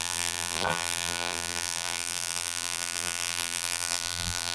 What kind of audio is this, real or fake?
fake